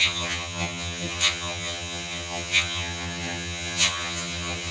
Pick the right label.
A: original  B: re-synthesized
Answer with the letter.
B